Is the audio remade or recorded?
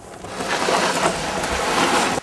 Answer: recorded